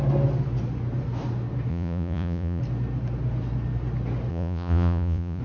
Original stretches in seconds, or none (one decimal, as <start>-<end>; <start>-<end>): 0.0-1.7; 2.6-4.3